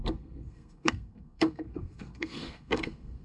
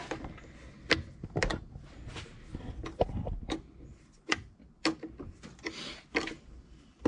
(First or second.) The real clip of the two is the second